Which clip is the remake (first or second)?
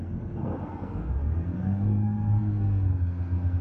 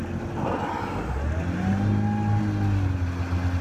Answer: first